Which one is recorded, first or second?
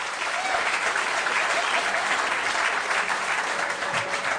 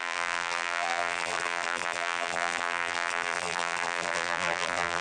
first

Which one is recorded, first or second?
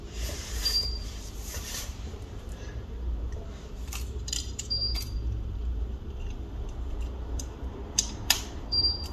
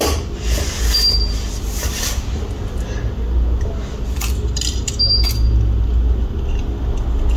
second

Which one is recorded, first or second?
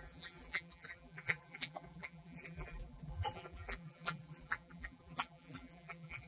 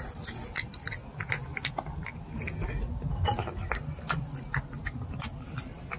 second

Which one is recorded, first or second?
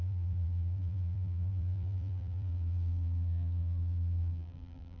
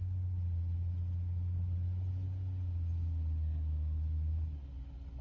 second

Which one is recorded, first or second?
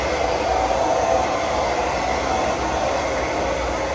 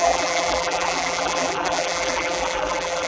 first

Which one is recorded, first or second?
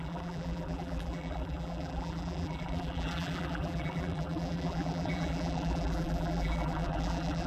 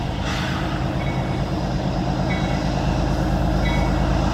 second